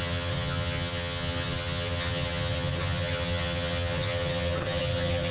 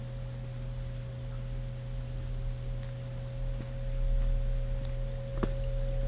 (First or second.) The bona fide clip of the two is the second